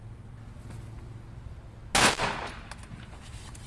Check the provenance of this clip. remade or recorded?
recorded